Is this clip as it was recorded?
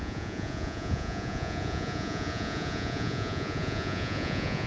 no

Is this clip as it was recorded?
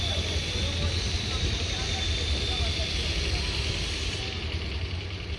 yes